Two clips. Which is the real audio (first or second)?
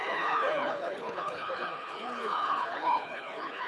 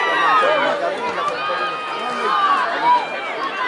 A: second